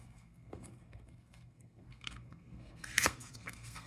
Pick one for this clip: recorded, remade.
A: remade